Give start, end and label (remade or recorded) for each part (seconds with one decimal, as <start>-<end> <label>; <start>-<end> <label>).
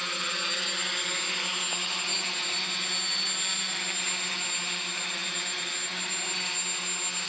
0.0-7.3 recorded